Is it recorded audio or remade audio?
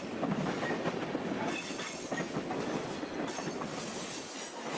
recorded